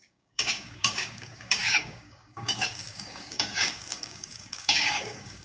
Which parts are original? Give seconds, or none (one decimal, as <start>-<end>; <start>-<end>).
none